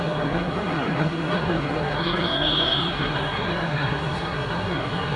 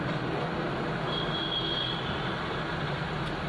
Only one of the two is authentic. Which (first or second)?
second